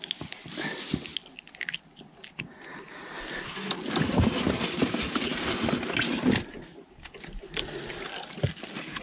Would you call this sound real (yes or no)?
yes